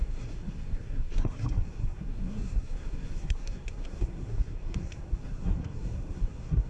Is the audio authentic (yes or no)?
no